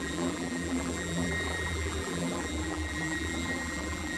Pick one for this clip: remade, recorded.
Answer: remade